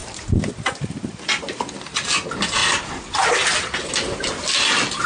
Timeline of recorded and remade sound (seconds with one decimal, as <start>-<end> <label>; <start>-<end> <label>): 0.0-5.1 recorded